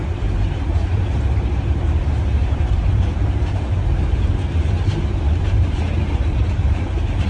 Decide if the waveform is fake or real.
fake